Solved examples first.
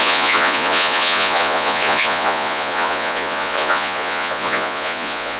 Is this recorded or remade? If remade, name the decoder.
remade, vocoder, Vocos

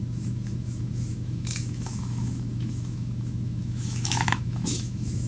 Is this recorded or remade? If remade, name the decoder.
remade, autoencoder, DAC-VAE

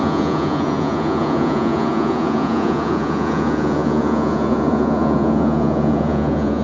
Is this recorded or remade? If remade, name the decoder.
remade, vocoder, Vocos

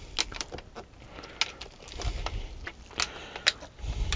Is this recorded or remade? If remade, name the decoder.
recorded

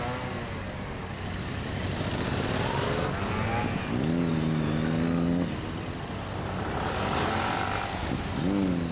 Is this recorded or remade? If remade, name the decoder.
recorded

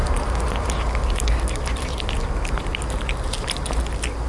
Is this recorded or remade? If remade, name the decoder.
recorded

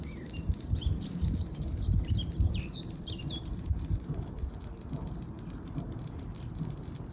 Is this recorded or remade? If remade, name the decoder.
remade, vocoder, BigVGAN v2